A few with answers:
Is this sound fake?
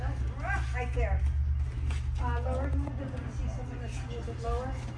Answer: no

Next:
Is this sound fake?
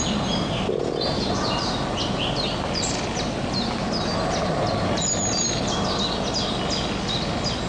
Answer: no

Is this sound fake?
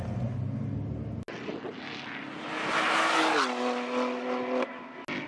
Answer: no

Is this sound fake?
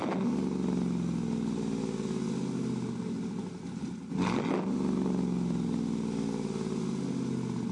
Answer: no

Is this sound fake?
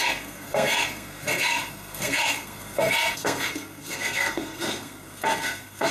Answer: yes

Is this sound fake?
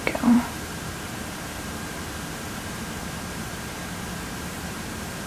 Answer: yes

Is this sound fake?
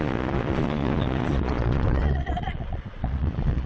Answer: yes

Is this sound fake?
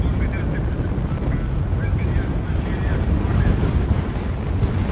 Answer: no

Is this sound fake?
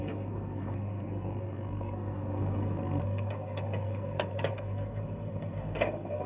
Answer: yes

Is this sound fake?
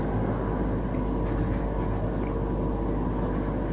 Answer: no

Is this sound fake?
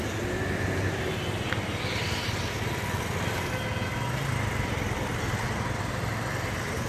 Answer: no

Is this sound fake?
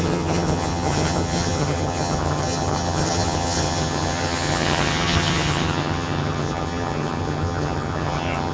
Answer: yes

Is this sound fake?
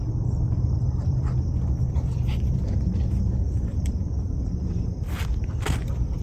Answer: yes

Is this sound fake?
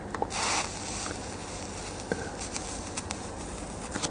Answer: no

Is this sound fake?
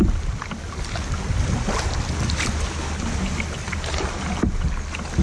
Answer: no